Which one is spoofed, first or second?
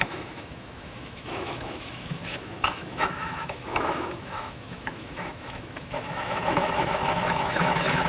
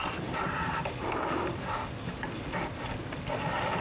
first